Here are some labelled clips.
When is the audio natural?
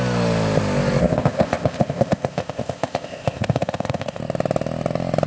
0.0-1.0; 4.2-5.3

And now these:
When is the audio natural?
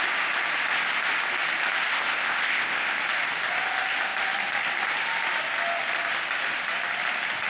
0.0-1.9; 2.9-7.5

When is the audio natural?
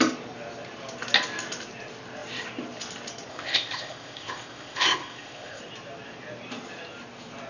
0.0-3.3; 5.6-7.5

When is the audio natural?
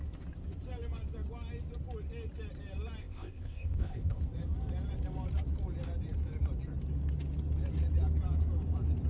0.0-3.0; 4.2-9.1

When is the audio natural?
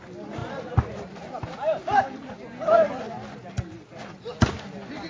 0.0-5.1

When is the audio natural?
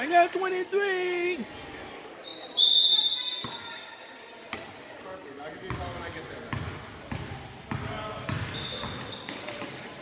0.0-10.0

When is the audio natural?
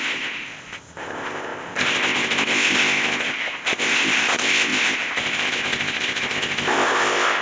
none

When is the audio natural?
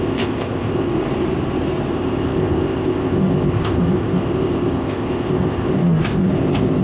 0.9-1.9